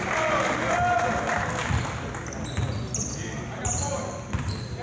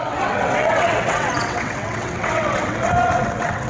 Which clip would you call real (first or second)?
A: first